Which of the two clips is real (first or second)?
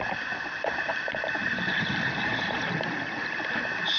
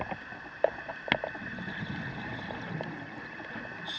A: second